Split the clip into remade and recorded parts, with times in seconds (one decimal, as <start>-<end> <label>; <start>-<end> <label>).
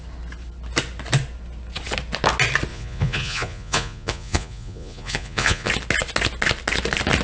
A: 0.0-2.7 recorded; 2.7-5.7 remade; 5.7-7.2 recorded